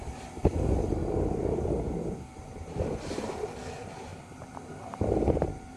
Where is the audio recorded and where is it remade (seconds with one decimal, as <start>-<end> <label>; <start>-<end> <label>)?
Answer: 0.0-0.4 recorded; 0.4-3.6 remade; 3.6-4.1 recorded; 4.1-4.8 remade; 4.8-5.8 recorded